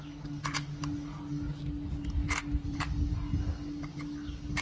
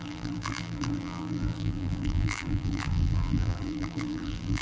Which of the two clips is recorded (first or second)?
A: first